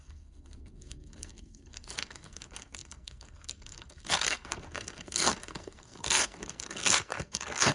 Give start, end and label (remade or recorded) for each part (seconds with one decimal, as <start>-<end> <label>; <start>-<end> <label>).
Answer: 0.0-7.7 remade